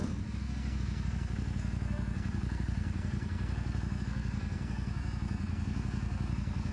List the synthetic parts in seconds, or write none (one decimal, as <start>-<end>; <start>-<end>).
0.0-6.7